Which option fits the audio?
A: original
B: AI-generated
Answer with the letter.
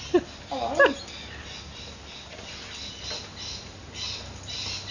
A